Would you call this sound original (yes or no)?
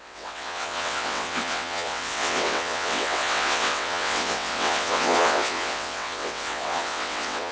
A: no